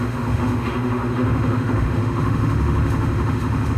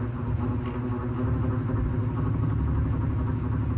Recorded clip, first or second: second